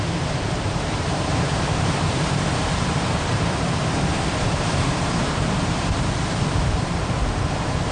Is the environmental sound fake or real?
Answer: fake